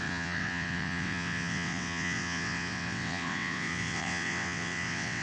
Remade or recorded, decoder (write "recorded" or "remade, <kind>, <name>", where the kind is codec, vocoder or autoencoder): remade, vocoder, WaveNeXt